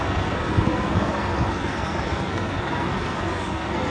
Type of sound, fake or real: fake